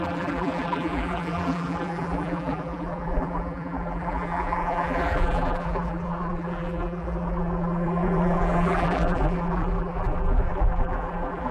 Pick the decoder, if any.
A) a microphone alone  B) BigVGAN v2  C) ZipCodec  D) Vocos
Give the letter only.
B